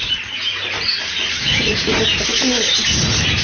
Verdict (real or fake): real